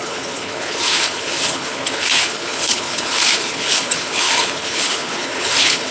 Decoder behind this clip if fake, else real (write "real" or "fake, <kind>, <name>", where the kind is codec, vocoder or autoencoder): fake, codec, HILCodec